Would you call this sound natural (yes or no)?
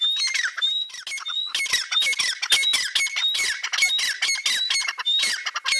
yes